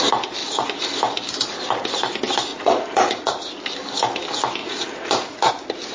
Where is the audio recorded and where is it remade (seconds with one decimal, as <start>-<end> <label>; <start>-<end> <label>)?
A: 0.0-0.4 recorded; 0.4-1.0 remade; 1.0-2.5 recorded; 2.5-3.3 remade; 3.3-4.6 recorded; 4.6-5.5 remade; 5.5-5.9 recorded